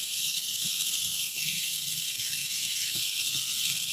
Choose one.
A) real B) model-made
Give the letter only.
B